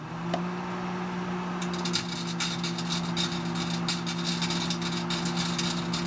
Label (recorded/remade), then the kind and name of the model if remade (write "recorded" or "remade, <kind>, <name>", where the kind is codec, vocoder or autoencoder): recorded